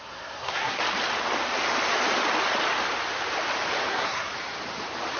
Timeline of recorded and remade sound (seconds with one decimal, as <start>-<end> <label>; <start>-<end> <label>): 0.0-0.8 remade; 0.8-3.9 recorded; 3.9-4.3 remade; 4.3-5.2 recorded